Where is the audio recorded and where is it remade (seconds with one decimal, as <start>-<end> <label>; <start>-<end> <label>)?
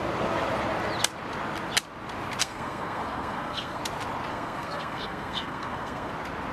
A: 0.0-2.4 recorded; 2.4-3.8 remade; 3.8-4.3 recorded; 4.3-6.1 remade; 6.1-6.5 recorded